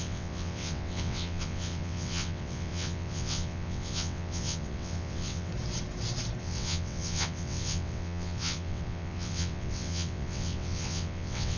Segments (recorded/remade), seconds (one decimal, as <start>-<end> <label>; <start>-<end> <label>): 0.0-5.5 remade; 5.5-6.4 recorded; 6.4-11.6 remade